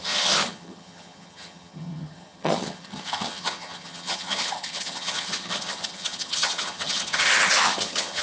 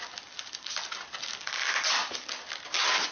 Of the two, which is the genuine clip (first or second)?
second